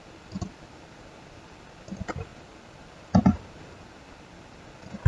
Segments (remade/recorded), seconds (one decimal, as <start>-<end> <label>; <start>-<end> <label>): 0.0-5.1 recorded